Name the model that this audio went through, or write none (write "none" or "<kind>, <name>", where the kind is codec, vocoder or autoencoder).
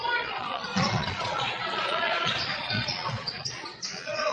vocoder, Vocos